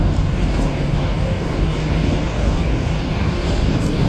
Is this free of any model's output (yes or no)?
no